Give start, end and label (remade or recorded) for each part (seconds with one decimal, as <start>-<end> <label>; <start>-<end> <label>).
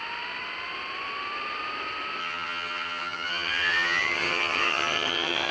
0.0-2.2 recorded; 2.2-5.5 remade